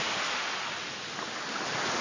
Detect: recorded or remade recorded